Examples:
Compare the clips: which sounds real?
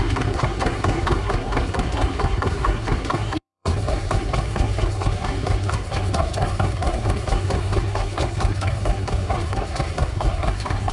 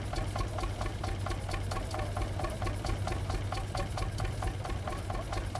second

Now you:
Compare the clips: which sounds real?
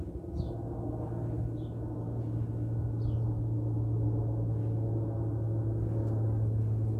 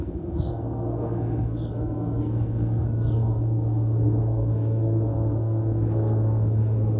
first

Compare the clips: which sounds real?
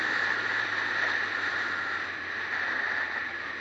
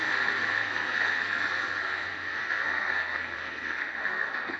first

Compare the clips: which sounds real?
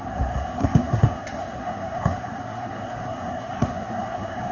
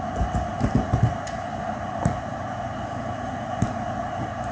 second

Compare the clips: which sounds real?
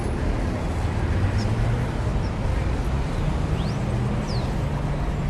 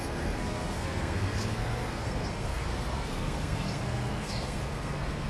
first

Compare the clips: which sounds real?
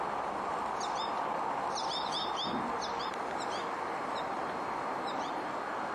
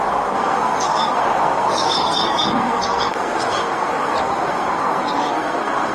first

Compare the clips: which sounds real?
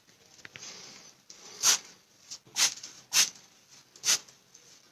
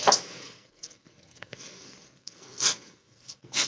first